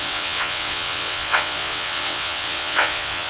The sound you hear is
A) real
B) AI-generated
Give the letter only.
B